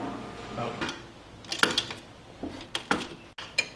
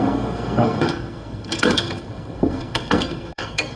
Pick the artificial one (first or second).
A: second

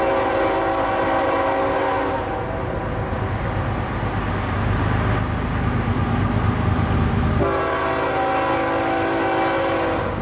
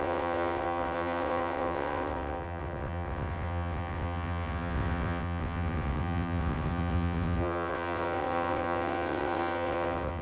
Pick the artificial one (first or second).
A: second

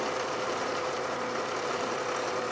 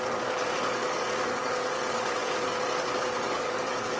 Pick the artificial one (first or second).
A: second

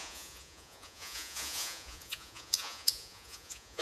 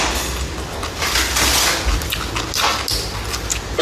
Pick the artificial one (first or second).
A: first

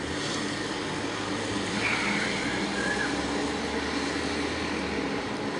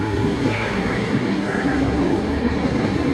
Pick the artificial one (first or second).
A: second